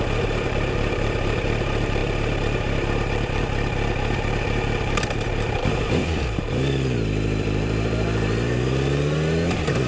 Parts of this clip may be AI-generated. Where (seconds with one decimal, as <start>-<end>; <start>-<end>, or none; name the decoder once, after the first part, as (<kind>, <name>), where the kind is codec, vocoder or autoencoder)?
0.0-9.9 (vocoder, BigVGAN v2)